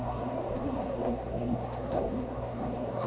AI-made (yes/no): yes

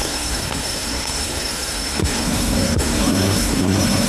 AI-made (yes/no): yes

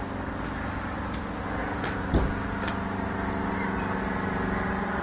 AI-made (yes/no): no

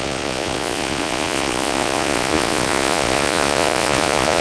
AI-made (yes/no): yes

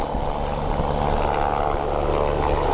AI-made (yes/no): no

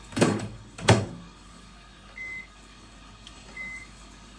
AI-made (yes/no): yes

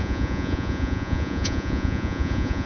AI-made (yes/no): yes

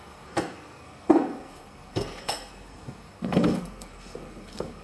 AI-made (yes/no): yes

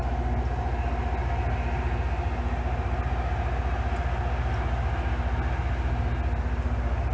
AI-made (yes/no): no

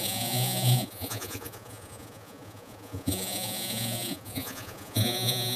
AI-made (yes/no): yes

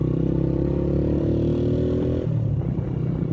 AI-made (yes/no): no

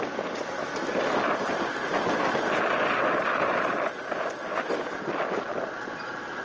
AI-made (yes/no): no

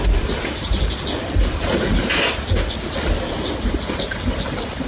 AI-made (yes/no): no